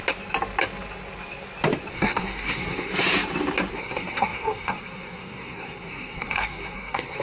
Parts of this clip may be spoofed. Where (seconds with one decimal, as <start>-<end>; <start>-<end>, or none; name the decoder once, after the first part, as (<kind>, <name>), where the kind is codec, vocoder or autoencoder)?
1.9-2.9 (codec, SNAC); 3.7-7.2